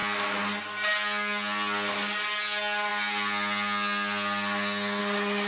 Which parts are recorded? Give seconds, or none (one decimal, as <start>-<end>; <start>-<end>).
0.0-5.5